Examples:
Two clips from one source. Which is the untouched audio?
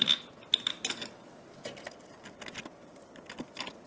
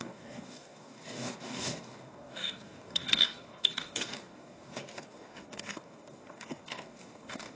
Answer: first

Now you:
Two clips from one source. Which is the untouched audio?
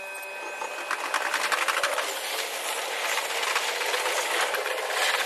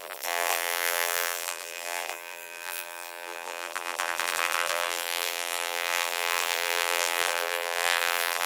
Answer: first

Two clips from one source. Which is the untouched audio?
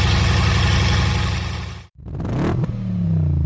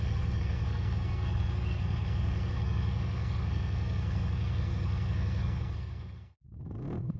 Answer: first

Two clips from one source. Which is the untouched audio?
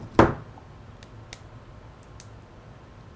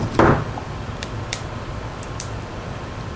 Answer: first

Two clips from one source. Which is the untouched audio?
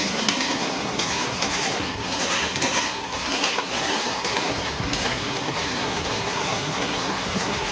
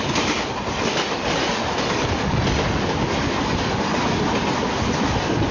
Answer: second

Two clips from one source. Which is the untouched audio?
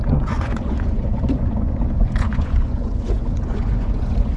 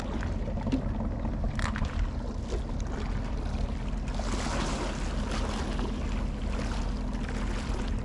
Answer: second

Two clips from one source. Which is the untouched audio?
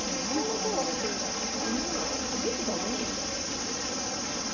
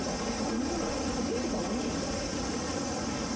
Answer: first